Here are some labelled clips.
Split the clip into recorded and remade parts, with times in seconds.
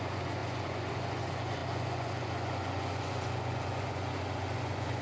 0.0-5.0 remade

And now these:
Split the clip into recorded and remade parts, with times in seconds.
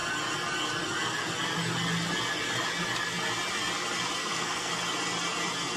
0.0-4.2 recorded; 4.2-4.7 remade; 4.7-5.8 recorded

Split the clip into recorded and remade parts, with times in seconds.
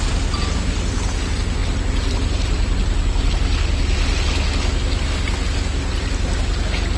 0.0-7.0 recorded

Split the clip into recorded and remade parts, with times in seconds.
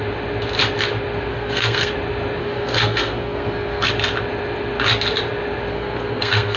0.0-1.3 recorded; 1.3-1.9 remade; 1.9-2.4 recorded; 2.4-3.9 remade; 3.9-5.7 recorded; 5.7-6.6 remade